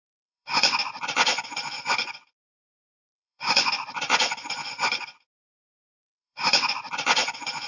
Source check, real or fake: fake